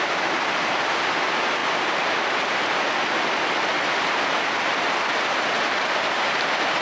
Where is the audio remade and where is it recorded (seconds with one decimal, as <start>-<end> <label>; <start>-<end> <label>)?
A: 0.0-6.8 recorded